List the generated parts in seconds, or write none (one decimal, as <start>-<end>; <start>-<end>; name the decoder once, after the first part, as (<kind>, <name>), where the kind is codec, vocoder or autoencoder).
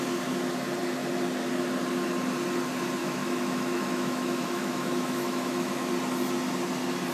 3.0-5.9 (autoencoder, DAC-VAE)